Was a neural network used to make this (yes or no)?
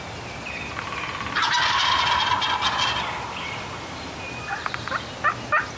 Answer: no